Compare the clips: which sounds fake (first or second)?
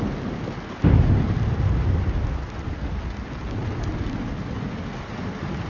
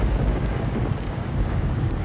second